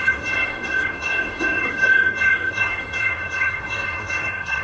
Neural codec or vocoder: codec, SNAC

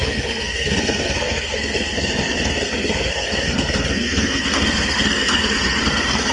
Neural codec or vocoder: codec, SNAC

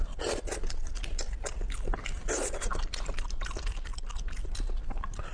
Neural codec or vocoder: none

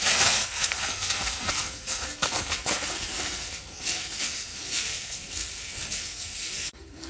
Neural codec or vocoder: codec, SNAC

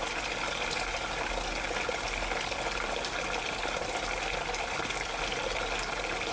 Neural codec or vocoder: none